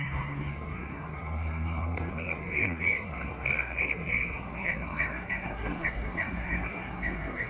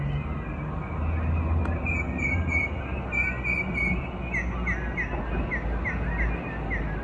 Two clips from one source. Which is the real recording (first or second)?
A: second